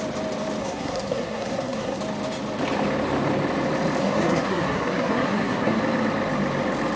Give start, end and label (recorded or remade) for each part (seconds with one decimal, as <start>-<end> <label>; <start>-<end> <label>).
0.0-0.6 recorded; 0.6-2.0 remade; 2.0-4.0 recorded; 4.0-5.8 remade; 5.8-7.0 recorded